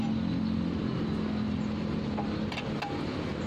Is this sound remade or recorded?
recorded